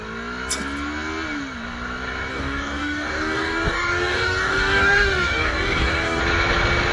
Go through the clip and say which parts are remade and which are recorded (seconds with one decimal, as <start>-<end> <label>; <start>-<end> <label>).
0.0-2.3 recorded; 2.3-6.2 remade; 6.2-6.9 recorded